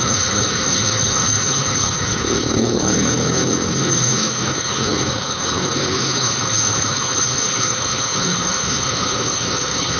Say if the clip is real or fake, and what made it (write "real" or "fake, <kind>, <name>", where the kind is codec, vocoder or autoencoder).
fake, codec, HILCodec